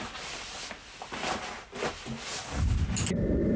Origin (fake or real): real